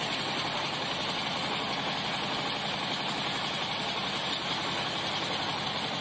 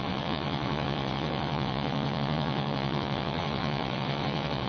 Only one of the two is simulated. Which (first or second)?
second